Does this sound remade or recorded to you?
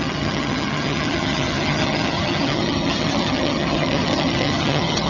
remade